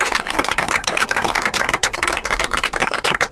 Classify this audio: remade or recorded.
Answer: remade